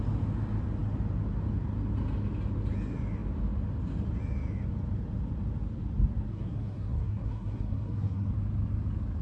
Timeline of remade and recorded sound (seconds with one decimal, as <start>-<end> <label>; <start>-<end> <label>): 0.0-6.3 recorded; 6.3-8.3 remade; 8.3-9.2 recorded